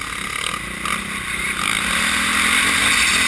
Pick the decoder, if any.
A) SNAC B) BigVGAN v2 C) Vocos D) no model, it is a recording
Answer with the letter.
D